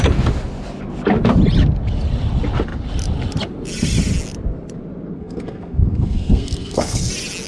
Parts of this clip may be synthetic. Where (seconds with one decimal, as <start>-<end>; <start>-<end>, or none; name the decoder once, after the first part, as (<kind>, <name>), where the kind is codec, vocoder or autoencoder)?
5.1-7.1 (codec, SNAC)